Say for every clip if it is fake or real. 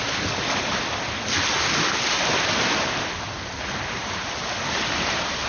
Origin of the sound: real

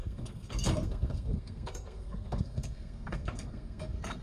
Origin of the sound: fake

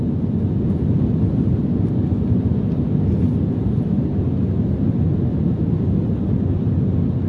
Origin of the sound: real